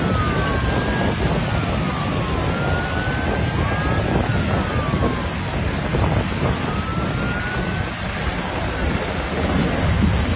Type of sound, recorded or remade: recorded